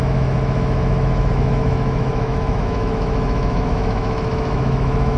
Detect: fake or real fake